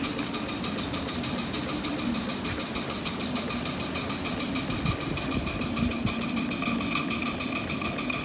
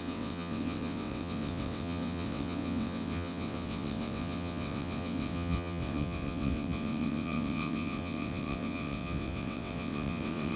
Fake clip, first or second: second